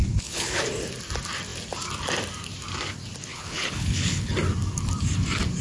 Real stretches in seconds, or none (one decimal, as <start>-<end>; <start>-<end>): 0.6-3.3; 4.3-5.6